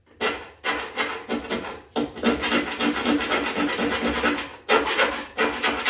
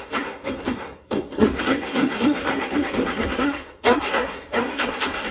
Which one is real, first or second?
first